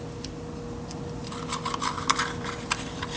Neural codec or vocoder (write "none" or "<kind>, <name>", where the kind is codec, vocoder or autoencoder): none